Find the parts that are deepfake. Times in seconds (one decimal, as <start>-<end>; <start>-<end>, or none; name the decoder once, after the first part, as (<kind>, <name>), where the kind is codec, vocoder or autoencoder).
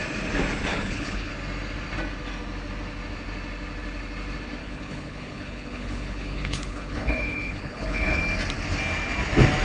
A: 0.7-1.3 (codec, HILCodec); 4.6-8.2